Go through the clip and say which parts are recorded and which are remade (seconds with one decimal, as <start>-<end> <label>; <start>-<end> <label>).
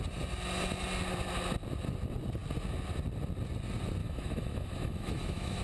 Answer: 0.0-4.0 recorded; 4.0-5.6 remade